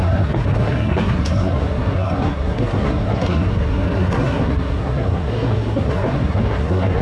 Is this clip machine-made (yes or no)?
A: yes